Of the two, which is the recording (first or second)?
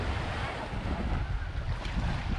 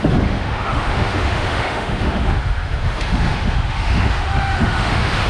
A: first